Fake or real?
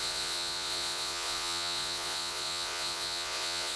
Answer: fake